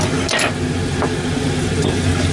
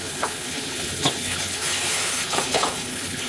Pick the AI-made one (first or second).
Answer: second